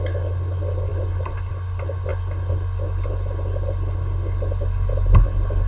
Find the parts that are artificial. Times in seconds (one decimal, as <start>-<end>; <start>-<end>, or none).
none